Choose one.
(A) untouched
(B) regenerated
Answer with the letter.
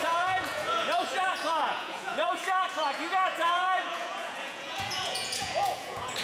B